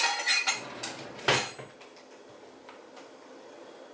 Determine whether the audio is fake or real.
real